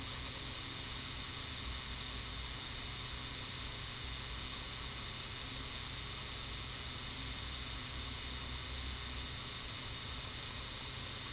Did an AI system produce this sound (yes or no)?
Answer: no